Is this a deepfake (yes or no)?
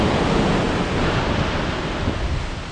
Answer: no